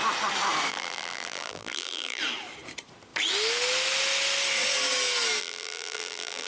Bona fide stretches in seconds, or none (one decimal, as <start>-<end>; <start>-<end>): 0.0-0.7; 2.2-5.4